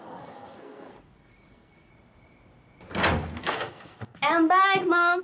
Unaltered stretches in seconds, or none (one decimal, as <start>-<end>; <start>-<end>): 1.9-3.4; 4.2-5.2